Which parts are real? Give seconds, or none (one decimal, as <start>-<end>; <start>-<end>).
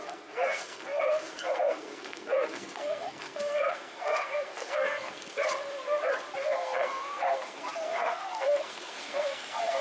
5.4-6.4